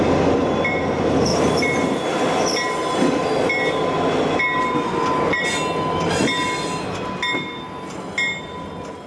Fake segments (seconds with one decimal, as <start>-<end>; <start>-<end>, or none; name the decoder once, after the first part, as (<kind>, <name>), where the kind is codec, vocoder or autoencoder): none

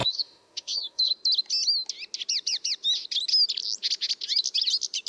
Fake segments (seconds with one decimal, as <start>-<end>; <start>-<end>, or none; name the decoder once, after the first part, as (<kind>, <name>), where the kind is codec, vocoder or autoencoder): 0.0-1.1 (autoencoder, DAC-VAE)

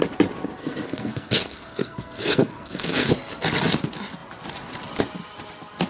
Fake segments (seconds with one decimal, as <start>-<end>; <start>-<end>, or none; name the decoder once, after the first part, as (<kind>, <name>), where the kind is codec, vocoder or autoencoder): 0.6-3.1 (codec, SNAC)